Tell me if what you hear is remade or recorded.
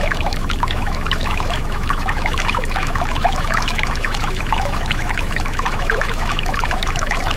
remade